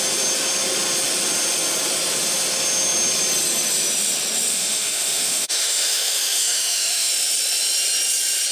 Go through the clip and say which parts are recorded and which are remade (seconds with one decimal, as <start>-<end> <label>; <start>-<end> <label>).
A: 0.0-4.5 recorded; 4.5-7.1 remade; 7.1-8.5 recorded